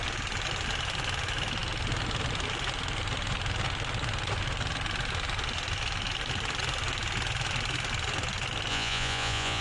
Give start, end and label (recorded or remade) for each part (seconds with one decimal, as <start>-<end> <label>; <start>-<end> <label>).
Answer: 0.0-8.7 recorded; 8.7-9.6 remade